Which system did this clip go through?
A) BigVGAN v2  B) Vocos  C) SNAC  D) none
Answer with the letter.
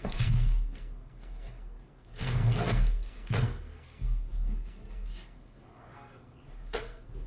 C